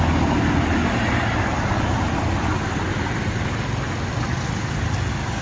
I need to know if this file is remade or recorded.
recorded